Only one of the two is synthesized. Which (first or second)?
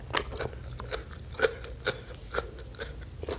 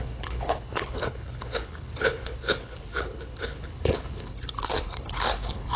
second